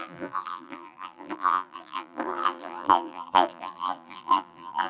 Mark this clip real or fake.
fake